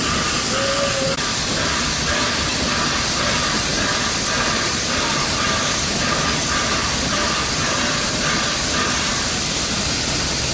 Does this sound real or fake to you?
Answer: real